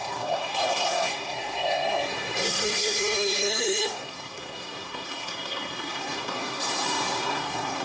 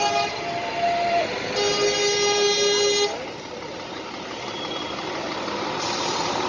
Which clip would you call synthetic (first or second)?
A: first